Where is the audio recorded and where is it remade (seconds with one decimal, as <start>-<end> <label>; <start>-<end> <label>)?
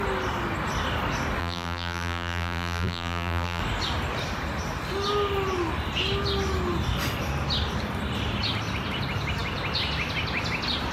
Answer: 0.0-1.4 recorded; 1.4-3.6 remade; 3.6-10.9 recorded